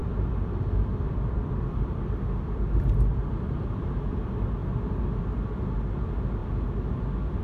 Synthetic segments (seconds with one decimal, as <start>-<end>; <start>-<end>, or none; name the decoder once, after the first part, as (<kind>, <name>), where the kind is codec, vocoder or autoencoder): 0.0-4.1 (vocoder, BigVGAN v2)